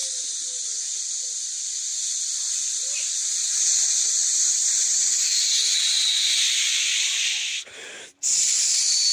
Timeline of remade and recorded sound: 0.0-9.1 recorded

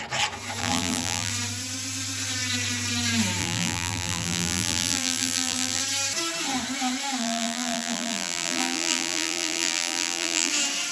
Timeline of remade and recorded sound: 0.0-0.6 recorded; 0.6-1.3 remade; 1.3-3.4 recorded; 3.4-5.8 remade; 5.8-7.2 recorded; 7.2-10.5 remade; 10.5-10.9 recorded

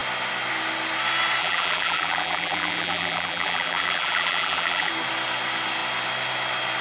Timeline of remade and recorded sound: 0.0-1.4 recorded; 1.4-4.9 remade; 4.9-6.8 recorded